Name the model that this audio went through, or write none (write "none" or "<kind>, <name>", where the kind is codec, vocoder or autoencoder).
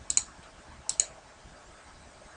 none